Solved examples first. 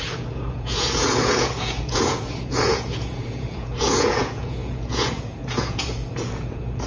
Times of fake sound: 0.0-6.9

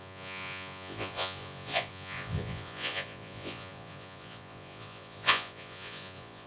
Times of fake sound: 0.0-6.5

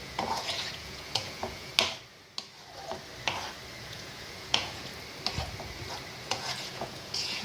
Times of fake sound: 0.0-1.7; 3.8-4.9; 6.2-7.4